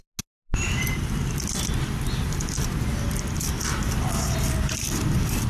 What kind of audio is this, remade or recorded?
recorded